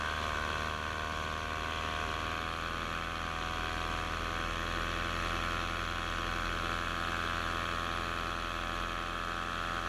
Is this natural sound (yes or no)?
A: yes